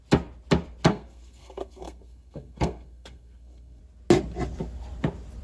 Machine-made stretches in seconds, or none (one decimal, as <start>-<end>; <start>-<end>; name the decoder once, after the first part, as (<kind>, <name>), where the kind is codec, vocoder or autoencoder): 0.9-3.8 (codec, SNAC)